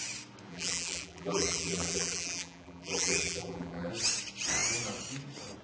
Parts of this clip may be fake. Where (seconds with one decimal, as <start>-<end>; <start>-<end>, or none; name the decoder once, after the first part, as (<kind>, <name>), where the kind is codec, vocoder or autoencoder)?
0.5-3.9 (vocoder, BigVGAN v2)

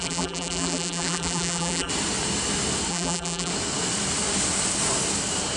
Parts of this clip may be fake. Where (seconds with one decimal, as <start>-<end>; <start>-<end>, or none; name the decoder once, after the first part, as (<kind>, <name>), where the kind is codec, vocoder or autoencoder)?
0.0-1.9 (vocoder, BigVGAN v2); 2.9-3.5

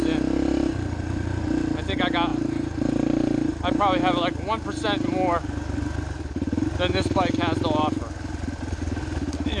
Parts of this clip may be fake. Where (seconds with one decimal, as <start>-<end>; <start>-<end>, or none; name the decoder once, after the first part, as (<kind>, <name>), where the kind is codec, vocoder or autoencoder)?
2.3-3.5 (vocoder, BigVGAN v2)

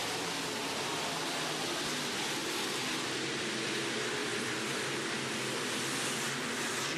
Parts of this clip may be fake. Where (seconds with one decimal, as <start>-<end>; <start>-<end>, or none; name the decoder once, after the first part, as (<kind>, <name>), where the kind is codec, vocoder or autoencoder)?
4.2-4.8 (vocoder, BigVGAN v2)

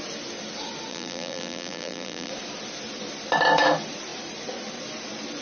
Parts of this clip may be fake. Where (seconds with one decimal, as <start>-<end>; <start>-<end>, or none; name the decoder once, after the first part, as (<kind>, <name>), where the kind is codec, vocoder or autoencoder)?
0.9-2.3 (vocoder, BigVGAN v2)

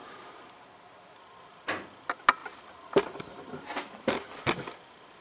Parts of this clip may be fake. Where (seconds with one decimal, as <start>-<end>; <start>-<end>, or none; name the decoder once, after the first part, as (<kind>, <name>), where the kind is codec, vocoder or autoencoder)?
0.0-0.5 (vocoder, BigVGAN v2)

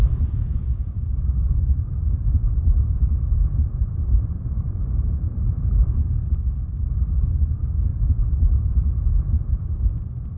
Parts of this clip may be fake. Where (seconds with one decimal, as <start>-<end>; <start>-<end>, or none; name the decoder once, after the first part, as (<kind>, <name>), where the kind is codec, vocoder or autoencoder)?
0.0-10.4 (vocoder, BigVGAN v2)

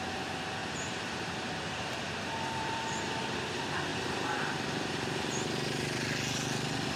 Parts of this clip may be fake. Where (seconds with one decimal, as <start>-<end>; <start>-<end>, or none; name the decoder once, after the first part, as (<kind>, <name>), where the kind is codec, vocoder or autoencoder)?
0.6-3.4 (vocoder, BigVGAN v2); 3.9-4.4